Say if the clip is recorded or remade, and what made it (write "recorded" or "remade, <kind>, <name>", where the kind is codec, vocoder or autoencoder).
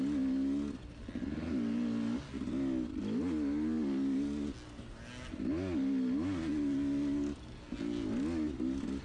recorded